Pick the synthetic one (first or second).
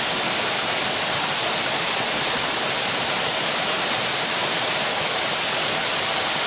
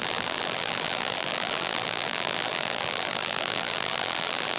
second